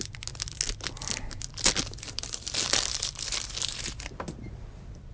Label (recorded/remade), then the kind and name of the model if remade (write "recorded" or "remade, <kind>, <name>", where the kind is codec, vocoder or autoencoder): recorded